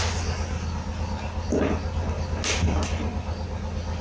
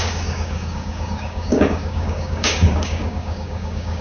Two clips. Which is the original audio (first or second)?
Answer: first